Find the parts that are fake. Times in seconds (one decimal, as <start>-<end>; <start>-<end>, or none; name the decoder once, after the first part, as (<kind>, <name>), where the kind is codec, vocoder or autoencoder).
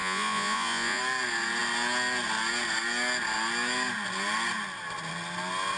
0.0-1.0 (vocoder, Vocos)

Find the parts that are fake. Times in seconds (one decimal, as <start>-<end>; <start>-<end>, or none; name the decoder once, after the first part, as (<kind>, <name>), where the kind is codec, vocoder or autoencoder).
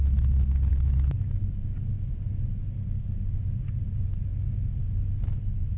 none